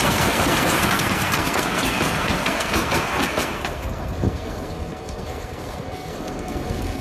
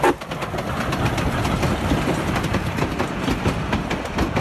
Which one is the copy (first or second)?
first